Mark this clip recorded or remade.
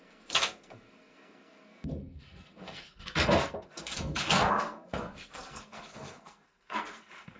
remade